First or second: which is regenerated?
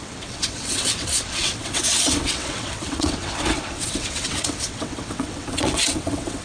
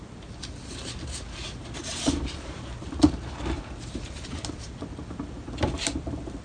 first